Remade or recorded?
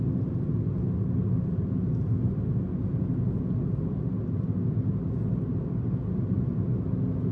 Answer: recorded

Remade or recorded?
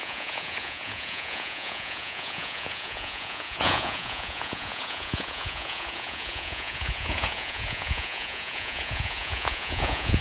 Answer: remade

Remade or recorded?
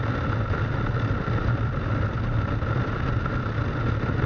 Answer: recorded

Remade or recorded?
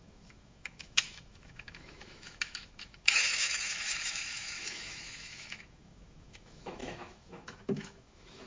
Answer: remade